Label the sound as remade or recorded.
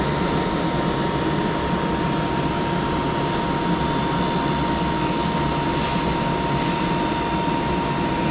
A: recorded